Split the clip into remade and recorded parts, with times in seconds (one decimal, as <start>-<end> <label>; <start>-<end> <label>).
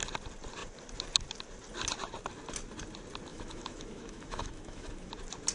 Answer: 0.0-3.3 recorded; 3.3-5.1 remade; 5.1-5.5 recorded